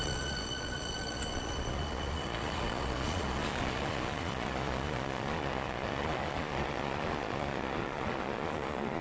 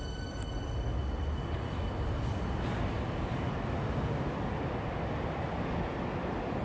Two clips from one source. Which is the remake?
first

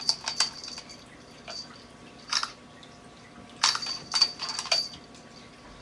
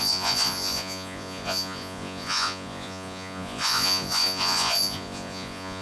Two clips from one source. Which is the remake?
second